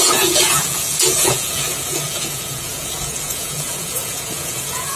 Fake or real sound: fake